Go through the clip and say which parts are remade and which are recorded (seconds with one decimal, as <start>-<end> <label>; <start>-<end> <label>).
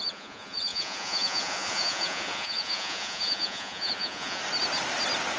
0.0-4.4 remade; 4.4-5.4 recorded